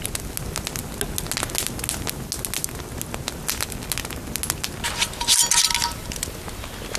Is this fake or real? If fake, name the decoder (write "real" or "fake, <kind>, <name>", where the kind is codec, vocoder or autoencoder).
real